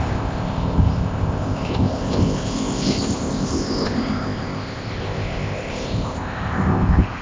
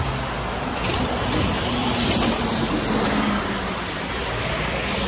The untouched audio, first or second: second